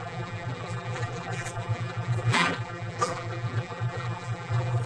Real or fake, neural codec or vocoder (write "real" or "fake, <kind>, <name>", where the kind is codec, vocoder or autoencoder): fake, vocoder, BigVGAN v2